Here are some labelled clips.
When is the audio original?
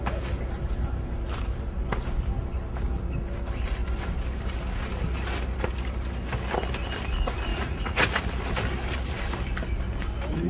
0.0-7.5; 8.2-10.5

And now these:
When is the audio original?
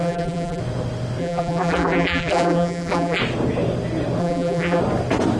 0.6-1.2; 3.2-4.2; 4.8-5.4